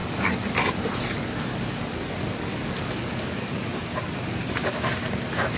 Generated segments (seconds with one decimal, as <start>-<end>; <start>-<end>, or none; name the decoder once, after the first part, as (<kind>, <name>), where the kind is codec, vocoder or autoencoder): 1.5-4.9 (codec, DAC)